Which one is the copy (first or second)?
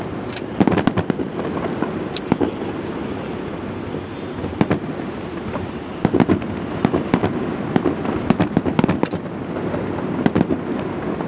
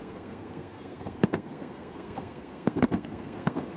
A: second